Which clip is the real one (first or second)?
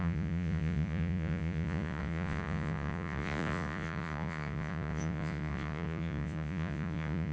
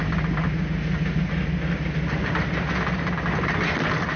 second